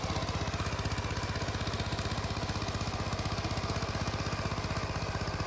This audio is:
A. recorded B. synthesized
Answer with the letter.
A